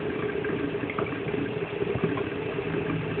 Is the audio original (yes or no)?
yes